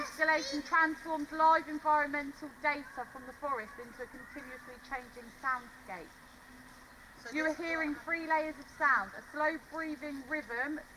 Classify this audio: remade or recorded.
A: recorded